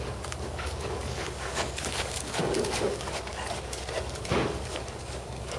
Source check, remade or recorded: remade